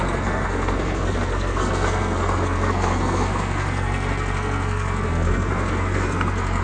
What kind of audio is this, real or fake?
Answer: fake